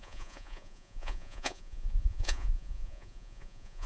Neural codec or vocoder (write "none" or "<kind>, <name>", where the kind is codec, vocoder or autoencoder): vocoder, Vocos